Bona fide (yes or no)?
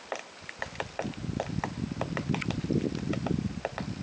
yes